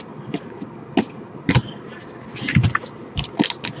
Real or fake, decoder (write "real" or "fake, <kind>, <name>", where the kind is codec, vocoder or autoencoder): real